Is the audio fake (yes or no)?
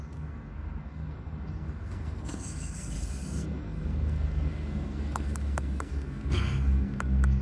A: yes